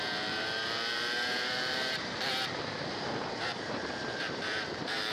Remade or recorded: remade